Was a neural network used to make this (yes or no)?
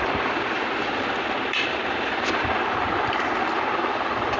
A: yes